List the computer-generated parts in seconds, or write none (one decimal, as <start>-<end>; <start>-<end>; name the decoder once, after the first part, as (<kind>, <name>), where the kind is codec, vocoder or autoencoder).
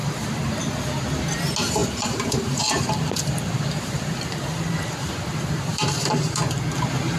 0.0-0.6 (vocoder, BigVGAN v2); 1.8-5.1; 5.7-6.6